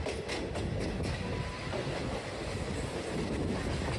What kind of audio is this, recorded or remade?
recorded